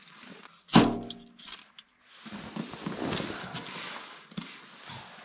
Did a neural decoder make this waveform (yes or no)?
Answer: no